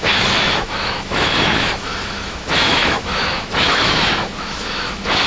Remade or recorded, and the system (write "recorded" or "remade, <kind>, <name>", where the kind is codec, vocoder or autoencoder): remade, autoencoder, DAC-VAE